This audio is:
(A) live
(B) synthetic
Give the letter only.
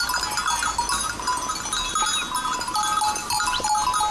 A